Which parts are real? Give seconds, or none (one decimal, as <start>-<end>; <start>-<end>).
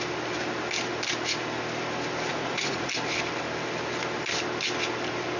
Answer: 0.0-2.3; 2.9-5.4